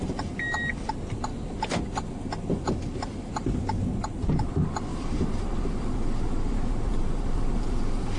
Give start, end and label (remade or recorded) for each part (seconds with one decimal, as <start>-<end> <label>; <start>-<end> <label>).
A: 0.0-1.3 recorded; 1.3-3.3 remade; 3.3-4.9 recorded; 4.9-8.2 remade